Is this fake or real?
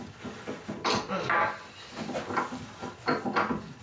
real